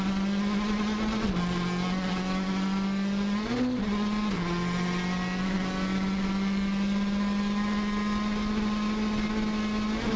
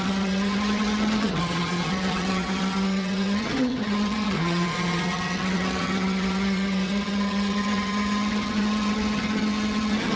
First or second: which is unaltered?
first